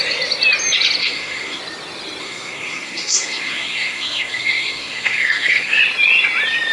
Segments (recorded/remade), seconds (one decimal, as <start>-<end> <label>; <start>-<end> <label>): 0.0-1.0 recorded; 1.0-1.6 remade; 1.6-2.2 recorded; 2.2-5.8 remade; 5.8-6.7 recorded